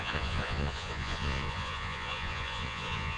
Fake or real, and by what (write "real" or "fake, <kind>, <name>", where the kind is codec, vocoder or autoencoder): fake, vocoder, Vocos